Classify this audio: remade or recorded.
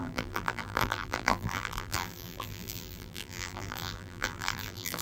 remade